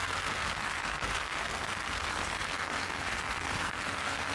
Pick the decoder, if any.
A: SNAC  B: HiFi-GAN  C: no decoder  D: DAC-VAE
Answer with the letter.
A